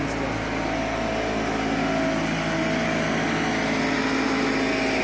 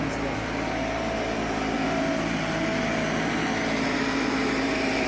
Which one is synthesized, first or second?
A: second